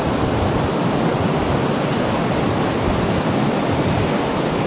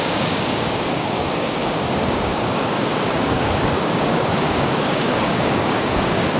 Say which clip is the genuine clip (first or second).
first